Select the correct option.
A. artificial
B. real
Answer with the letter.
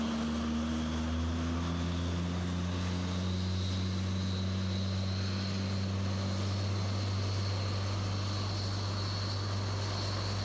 B